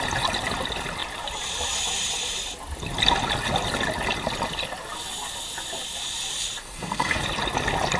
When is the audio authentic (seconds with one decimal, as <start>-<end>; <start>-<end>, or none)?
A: 0.0-6.6; 7.2-8.0